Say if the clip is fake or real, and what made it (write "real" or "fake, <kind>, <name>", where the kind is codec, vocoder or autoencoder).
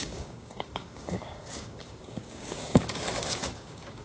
fake, codec, DAC